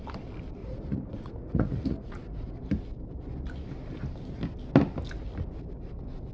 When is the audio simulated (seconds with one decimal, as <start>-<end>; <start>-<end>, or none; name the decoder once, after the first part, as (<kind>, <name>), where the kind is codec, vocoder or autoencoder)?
0.6-2.6 (vocoder, Vocos)

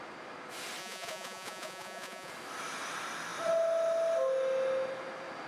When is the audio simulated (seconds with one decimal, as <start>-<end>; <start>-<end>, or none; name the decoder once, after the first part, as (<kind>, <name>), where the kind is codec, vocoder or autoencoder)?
0.8-2.3 (vocoder, Vocos)

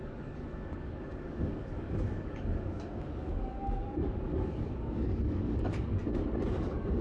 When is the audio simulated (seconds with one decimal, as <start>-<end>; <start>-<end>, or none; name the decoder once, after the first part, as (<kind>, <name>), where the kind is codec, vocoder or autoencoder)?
0.0-6.0 (codec, DAC); 6.5-7.0

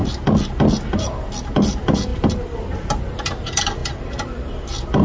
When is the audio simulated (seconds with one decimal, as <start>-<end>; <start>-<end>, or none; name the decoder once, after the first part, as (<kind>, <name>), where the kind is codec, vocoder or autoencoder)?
none

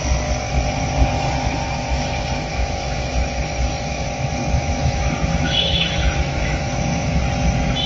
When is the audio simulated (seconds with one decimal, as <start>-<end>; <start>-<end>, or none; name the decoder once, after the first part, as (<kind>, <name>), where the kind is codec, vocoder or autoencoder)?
2.5-7.2 (autoencoder, DAC-VAE)